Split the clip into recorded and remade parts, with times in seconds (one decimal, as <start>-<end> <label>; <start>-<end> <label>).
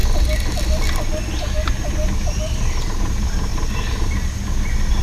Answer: 0.0-5.0 recorded